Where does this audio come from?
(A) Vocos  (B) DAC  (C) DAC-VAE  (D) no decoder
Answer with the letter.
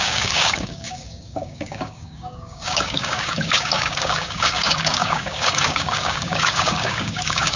B